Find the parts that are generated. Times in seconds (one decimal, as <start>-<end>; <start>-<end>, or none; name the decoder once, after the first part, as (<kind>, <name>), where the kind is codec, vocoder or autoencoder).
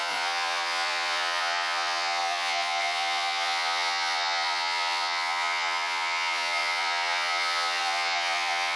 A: 0.0-8.8 (vocoder, Vocos)